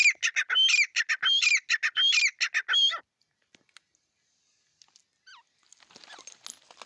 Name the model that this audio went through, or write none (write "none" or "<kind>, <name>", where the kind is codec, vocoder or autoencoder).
none